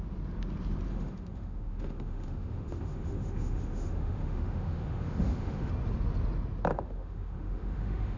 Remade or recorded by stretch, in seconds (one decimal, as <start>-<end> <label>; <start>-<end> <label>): 0.0-0.9 recorded; 0.9-5.7 remade; 5.7-6.7 recorded; 6.7-8.2 remade